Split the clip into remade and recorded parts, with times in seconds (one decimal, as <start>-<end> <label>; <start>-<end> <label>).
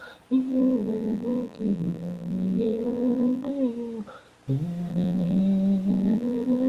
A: 0.0-0.5 recorded; 0.5-3.5 remade; 3.5-4.9 recorded; 4.9-5.4 remade; 5.4-5.9 recorded; 5.9-6.7 remade